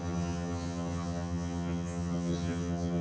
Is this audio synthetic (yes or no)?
yes